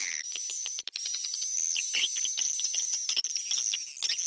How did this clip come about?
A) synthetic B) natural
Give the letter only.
B